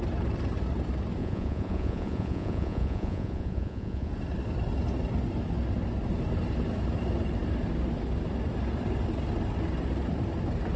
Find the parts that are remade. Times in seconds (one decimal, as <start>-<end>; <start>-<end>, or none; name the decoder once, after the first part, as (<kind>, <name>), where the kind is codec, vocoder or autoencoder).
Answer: 1.2-4.1 (vocoder, Vocos)